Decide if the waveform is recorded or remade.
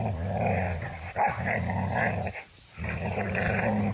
remade